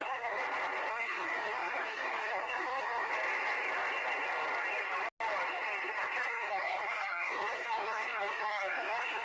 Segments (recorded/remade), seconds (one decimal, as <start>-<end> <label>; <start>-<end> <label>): 0.0-0.4 remade; 0.4-0.9 recorded; 0.9-3.1 remade; 3.1-6.2 recorded; 6.2-9.2 remade